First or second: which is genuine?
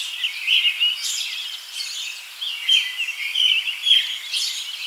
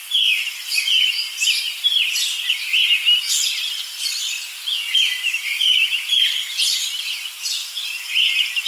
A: first